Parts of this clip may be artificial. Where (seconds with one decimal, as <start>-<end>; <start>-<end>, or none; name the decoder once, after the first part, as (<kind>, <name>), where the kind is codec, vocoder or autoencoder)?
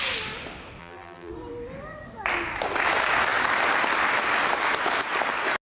0.8-1.3 (vocoder, BigVGAN v2)